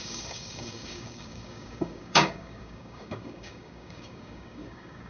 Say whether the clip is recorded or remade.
remade